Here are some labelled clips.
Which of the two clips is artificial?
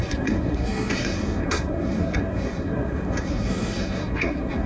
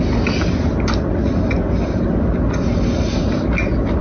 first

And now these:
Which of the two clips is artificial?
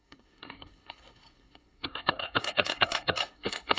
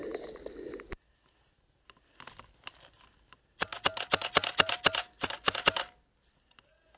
first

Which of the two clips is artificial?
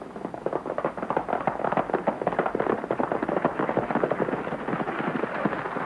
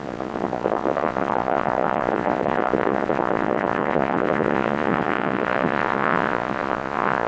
second